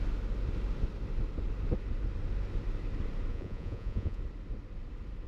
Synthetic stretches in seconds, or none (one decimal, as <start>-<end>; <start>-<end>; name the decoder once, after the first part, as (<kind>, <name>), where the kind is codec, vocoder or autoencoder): 3.3-4.2 (vocoder, Vocos)